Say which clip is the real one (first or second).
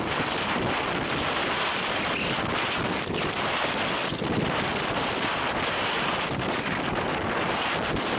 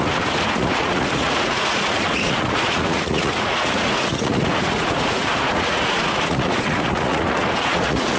first